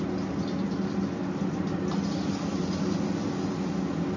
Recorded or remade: recorded